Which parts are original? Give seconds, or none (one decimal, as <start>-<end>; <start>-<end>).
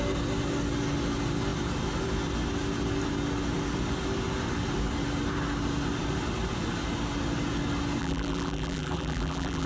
0.0-8.0